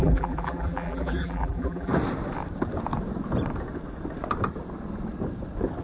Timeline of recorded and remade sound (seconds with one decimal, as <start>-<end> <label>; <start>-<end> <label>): 0.0-1.9 remade; 1.9-5.8 recorded